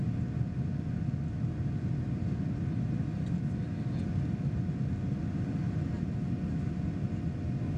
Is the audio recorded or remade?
recorded